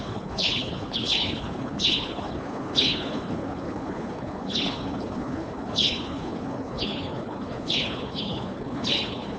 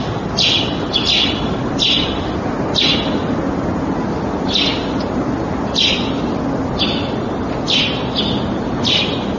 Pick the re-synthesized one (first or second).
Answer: first